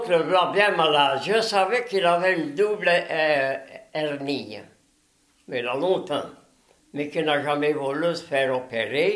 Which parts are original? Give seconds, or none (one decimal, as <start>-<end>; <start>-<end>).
0.0-9.2